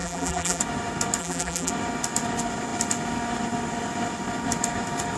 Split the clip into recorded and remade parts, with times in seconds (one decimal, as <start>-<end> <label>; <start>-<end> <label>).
0.0-0.6 remade; 0.6-1.2 recorded; 1.2-1.7 remade; 1.7-5.2 recorded

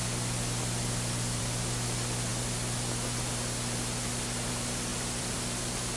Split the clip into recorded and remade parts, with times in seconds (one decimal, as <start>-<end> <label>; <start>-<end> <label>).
0.0-4.9 recorded; 4.9-5.4 remade; 5.4-6.0 recorded